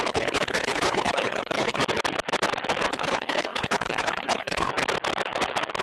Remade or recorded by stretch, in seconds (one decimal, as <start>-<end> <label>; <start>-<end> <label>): 0.0-1.8 remade; 1.8-2.9 recorded; 2.9-4.7 remade; 4.7-5.8 recorded